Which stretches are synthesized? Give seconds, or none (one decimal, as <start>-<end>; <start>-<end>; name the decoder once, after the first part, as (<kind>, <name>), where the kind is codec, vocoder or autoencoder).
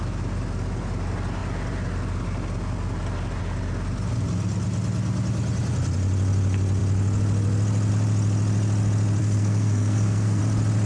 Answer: 9.2-10.4 (codec, SNAC)